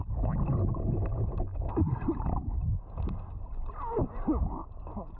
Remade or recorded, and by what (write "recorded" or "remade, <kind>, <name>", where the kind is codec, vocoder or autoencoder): recorded